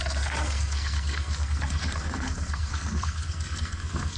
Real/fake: fake